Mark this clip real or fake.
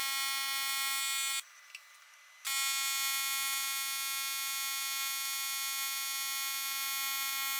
real